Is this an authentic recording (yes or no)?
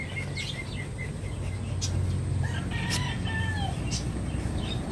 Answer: yes